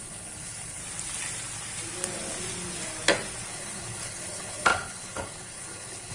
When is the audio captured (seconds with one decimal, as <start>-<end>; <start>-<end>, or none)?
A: 0.8-3.5